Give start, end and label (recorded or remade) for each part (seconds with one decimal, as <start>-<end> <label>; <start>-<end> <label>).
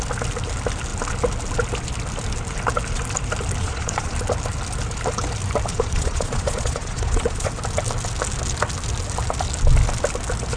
0.0-3.6 recorded; 3.6-4.1 remade; 4.1-5.7 recorded; 5.7-7.5 remade; 7.5-10.6 recorded